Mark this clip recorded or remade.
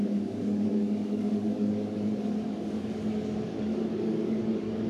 remade